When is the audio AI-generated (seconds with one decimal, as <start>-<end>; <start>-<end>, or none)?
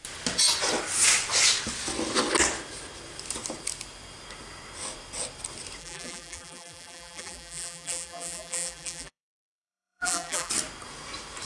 5.8-10.5